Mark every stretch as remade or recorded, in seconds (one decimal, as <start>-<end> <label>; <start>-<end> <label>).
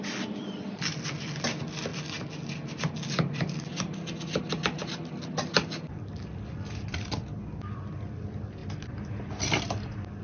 0.0-10.2 recorded